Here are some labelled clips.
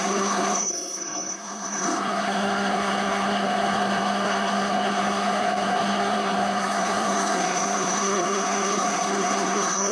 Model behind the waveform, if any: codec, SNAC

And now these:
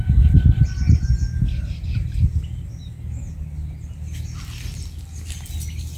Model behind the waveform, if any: none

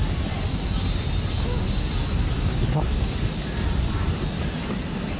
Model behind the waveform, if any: none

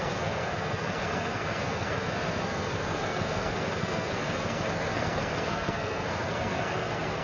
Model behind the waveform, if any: codec, SNAC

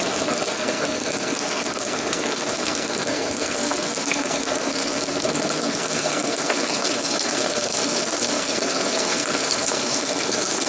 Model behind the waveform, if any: codec, SNAC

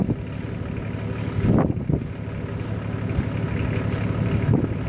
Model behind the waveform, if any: none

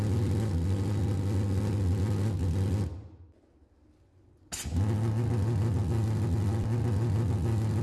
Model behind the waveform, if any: none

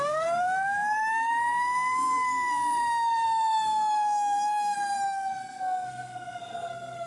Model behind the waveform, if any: codec, SNAC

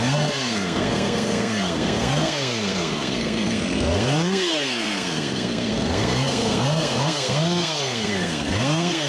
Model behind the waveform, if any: codec, SNAC